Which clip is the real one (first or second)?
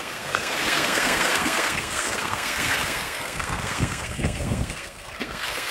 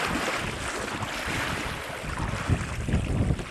second